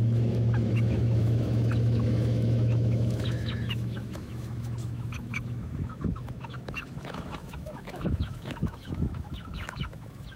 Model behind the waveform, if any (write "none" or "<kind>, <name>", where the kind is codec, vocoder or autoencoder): autoencoder, DAC-VAE